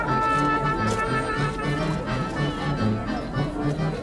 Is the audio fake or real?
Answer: real